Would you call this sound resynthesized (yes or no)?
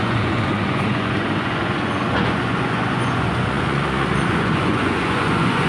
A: yes